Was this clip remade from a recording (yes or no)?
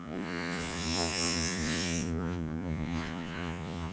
yes